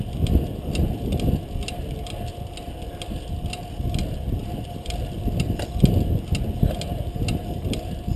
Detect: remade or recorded recorded